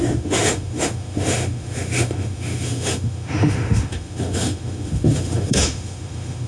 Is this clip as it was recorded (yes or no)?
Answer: no